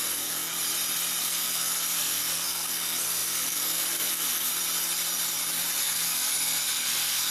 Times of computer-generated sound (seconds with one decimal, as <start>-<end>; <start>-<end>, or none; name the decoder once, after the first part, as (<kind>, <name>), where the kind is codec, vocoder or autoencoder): 0.0-0.5 (codec, SNAC); 1.2-4.5; 5.8-7.3

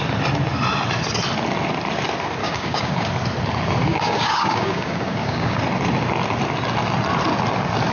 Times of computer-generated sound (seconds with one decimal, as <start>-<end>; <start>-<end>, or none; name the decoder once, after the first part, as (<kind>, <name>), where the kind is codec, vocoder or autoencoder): 2.4-3.1 (codec, DAC); 3.9-5.6

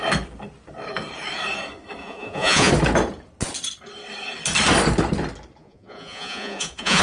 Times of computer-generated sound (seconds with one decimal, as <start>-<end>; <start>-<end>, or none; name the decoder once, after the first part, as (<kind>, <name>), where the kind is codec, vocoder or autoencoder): 2.0-2.7 (vocoder, Vocos); 5.6-7.0

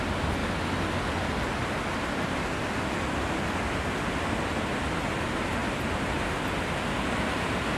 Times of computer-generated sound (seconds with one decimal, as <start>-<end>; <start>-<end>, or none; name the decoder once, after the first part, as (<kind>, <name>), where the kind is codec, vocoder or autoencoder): none

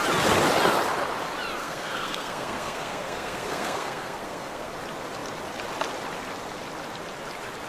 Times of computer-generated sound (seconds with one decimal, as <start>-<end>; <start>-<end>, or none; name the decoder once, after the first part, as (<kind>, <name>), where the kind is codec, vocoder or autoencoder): 1.6-4.7 (codec, SNAC)

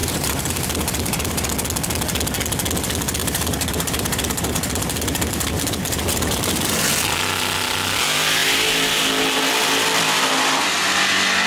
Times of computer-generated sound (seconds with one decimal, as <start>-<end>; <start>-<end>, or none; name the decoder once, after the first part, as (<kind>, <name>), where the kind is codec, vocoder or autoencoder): 0.0-1.5 (vocoder, BigVGAN v2); 3.2-6.4

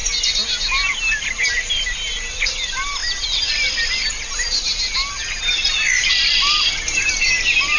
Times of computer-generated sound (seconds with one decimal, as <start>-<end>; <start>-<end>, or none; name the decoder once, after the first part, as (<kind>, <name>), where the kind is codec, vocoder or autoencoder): none